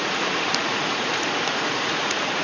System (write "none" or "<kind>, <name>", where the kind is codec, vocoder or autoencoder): vocoder, Vocos